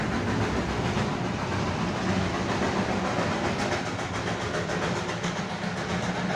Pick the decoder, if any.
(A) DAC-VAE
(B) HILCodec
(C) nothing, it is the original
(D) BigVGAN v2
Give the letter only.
C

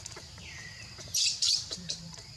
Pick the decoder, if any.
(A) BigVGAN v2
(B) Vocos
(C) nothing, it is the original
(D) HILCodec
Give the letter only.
A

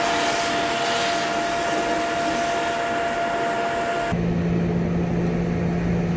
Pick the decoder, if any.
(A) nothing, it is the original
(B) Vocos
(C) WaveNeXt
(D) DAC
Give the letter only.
A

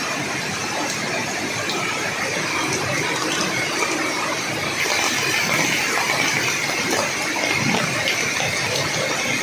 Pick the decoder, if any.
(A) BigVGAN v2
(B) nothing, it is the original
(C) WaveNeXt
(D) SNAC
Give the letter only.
B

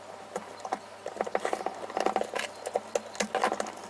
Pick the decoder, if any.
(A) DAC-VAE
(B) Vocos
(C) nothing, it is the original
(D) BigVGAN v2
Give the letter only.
C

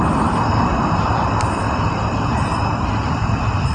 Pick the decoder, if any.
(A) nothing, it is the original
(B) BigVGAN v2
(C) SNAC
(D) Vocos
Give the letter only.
B